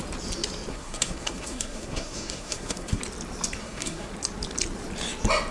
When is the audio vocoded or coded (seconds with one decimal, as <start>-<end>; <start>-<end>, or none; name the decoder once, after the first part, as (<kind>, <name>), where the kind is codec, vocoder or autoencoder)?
0.7-3.0 (codec, SNAC); 3.6-4.1